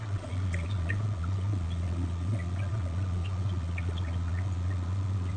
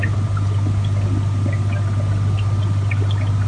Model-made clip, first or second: first